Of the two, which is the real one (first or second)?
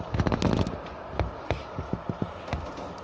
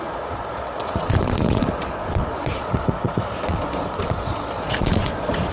first